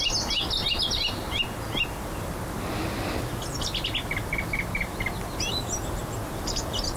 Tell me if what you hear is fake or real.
real